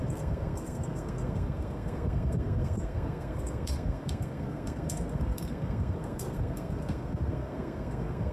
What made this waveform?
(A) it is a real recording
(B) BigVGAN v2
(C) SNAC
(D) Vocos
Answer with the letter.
C